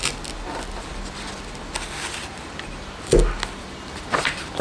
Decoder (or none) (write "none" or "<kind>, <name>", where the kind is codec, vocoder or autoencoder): none